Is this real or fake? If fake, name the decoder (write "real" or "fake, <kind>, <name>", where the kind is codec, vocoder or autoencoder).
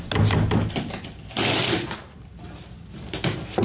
real